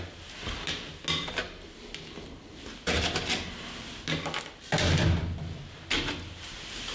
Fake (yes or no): no